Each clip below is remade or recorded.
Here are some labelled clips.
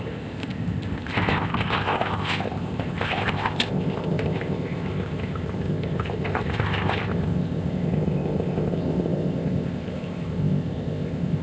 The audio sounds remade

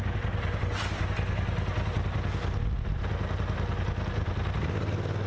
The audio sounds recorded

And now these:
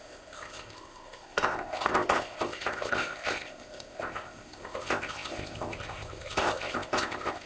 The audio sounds remade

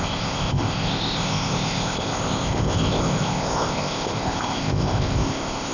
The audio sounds remade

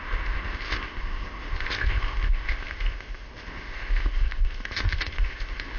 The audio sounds remade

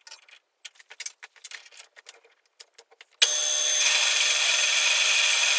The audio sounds recorded